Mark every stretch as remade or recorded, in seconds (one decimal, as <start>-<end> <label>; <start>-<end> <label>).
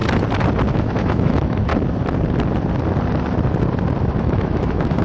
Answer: 0.0-0.7 recorded; 0.7-1.7 remade; 1.7-4.2 recorded; 4.2-5.0 remade